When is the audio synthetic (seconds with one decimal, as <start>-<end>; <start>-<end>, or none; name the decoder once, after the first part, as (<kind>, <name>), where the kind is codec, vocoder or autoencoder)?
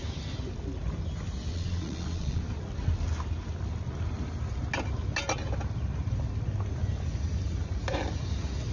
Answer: 1.5-2.4 (vocoder, Vocos)